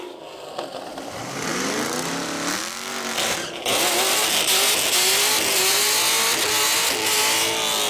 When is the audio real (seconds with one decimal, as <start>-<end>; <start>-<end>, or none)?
0.0-0.9; 1.5-3.7; 4.3-7.9